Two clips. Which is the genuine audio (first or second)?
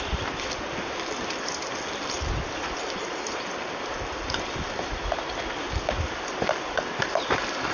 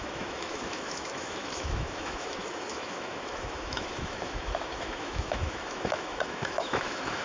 first